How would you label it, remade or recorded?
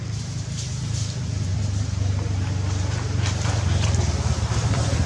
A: recorded